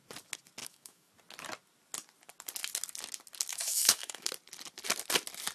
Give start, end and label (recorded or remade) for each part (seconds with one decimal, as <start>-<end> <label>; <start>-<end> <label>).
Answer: 0.0-0.6 recorded; 0.6-1.1 remade; 1.1-3.5 recorded; 3.5-4.3 remade; 4.3-5.5 recorded